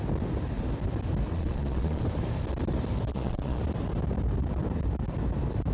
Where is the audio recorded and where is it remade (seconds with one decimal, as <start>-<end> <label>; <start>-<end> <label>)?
0.0-1.3 recorded; 1.3-2.0 remade; 2.0-3.1 recorded; 3.1-3.6 remade; 3.6-5.7 recorded